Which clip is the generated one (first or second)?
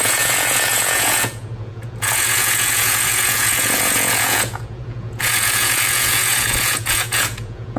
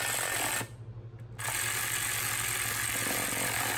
first